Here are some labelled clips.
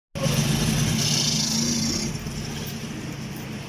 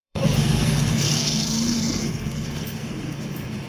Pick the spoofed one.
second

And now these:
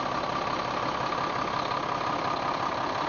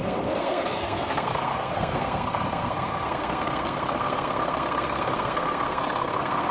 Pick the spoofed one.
second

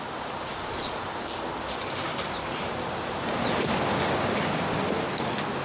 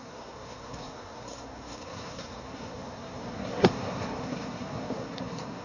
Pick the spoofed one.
second